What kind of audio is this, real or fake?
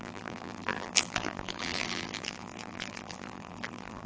fake